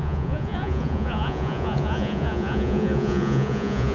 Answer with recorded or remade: remade